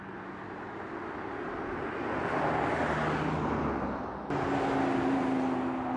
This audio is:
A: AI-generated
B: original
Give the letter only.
B